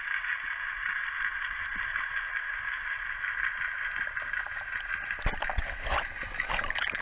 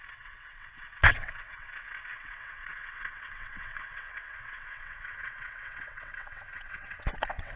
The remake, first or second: second